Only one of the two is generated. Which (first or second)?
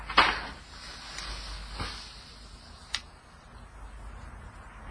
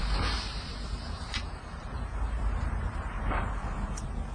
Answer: second